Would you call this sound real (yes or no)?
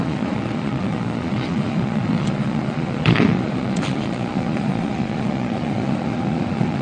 no